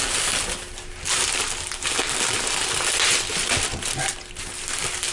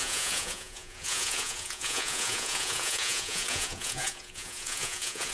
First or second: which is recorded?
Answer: first